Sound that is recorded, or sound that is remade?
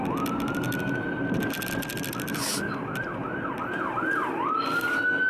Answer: recorded